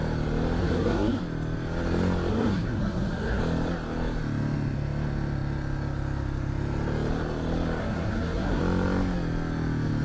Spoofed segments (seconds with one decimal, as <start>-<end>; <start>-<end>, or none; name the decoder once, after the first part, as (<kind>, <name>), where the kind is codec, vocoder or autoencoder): 0.6-1.2 (codec, SNAC); 2.3-3.4; 7.8-8.6

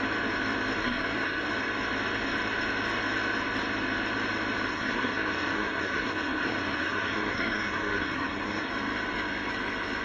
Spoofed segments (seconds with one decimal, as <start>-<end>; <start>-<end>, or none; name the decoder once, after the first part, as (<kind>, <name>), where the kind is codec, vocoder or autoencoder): 0.8-1.5 (codec, SNAC); 4.7-8.7

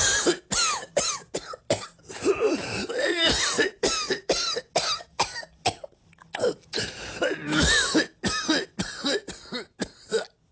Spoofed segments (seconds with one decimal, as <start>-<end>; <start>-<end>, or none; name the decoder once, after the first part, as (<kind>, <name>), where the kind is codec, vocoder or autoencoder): none

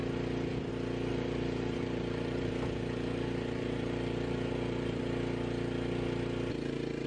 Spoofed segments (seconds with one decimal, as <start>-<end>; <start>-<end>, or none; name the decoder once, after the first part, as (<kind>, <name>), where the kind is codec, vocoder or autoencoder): 1.1-5.0 (vocoder, BigVGAN v2)

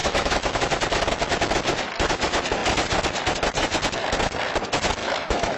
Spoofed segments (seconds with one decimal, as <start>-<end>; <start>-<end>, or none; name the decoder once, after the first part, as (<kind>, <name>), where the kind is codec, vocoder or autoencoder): 0.0-0.6 (autoencoder, DAC-VAE); 5.0-5.6